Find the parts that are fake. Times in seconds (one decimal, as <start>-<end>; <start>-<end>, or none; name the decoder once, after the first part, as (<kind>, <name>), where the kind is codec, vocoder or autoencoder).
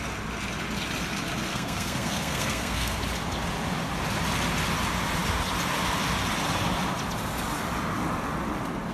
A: 1.5-3.0 (codec, SNAC)